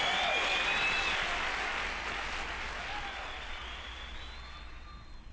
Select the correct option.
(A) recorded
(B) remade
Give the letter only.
A